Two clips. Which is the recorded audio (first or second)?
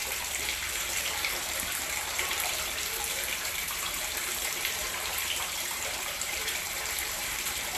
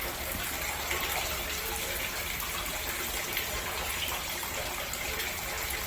second